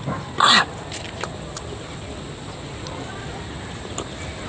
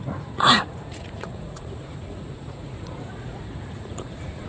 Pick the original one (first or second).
first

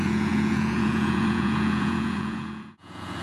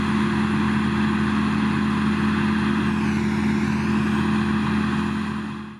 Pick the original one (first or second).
second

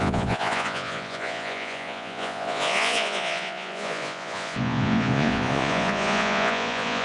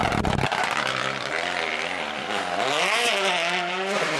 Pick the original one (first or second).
second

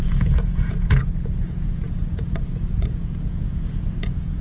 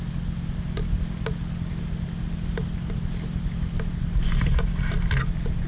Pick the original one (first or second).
second